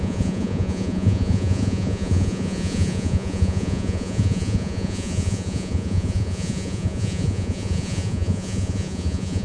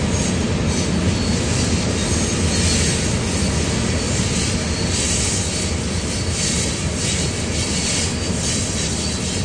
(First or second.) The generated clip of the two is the first